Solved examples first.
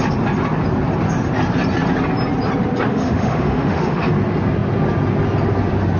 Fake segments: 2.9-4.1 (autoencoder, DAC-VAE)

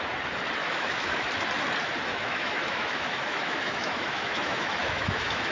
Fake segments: 0.6-1.3 (autoencoder, DAC-VAE); 2.1-5.5

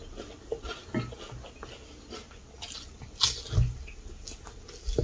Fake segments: none

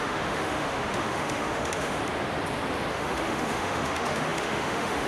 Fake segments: 0.0-2.0 (autoencoder, DAC-VAE); 2.9-5.1

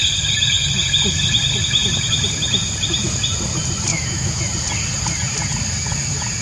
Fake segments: 3.9-4.4 (autoencoder, DAC-VAE)